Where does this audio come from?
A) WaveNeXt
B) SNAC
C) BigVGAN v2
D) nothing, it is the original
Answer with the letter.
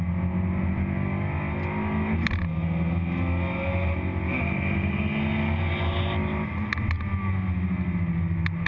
D